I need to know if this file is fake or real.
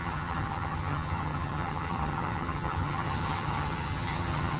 fake